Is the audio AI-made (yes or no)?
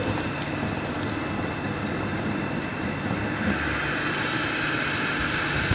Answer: yes